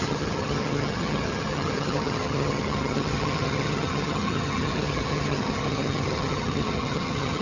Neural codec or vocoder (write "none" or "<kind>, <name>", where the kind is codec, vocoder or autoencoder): vocoder, HiFi-GAN